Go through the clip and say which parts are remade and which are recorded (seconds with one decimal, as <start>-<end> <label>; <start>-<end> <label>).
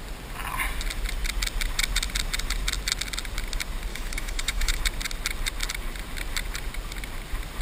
0.0-3.9 recorded; 3.9-4.8 remade; 4.8-7.6 recorded